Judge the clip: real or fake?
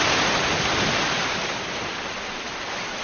real